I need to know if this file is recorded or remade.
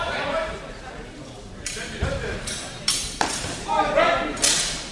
remade